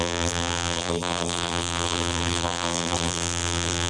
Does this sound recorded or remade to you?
remade